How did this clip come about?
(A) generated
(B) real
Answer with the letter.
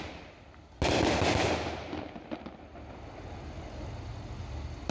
B